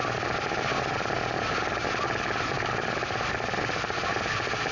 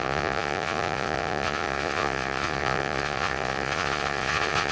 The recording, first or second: first